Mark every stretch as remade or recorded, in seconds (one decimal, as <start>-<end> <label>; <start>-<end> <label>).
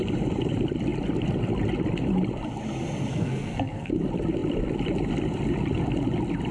0.0-3.1 recorded; 3.1-3.9 remade; 3.9-6.5 recorded